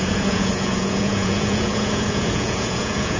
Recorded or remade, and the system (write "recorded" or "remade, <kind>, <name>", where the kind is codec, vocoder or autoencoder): remade, vocoder, Vocos